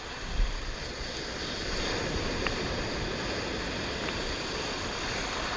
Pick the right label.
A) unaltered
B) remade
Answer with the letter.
A